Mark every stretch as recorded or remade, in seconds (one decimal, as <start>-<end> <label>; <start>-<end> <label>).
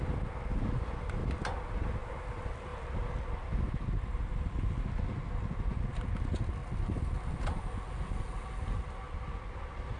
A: 0.0-10.0 recorded